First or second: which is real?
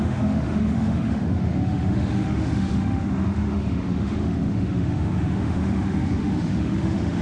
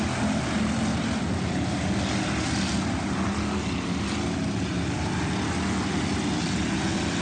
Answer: second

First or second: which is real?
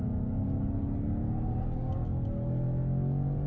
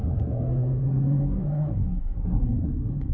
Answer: first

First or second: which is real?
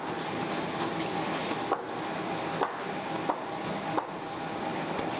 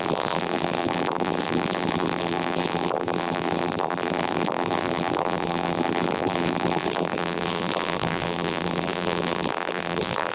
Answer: first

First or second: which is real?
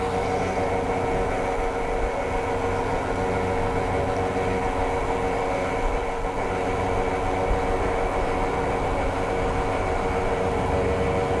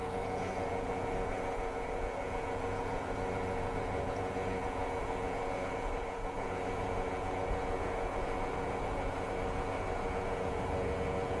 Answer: first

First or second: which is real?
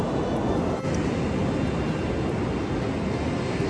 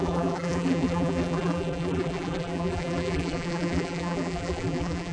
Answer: first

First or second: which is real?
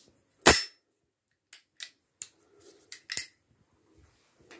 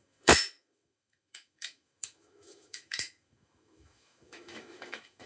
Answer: first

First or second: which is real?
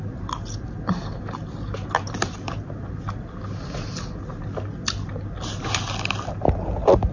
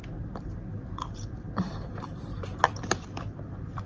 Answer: first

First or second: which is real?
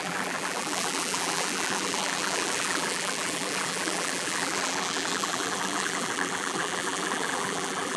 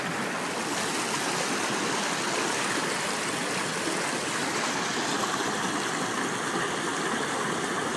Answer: second